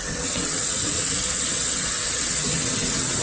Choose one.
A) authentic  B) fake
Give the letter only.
B